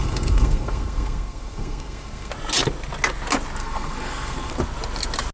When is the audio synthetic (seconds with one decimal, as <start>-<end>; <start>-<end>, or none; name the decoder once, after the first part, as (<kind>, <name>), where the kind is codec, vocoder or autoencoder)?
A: 0.0-2.3 (codec, SNAC); 3.6-4.5